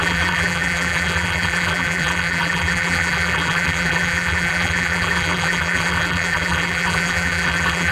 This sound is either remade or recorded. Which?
remade